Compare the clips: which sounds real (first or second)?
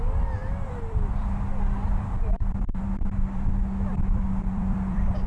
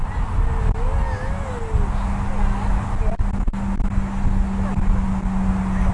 second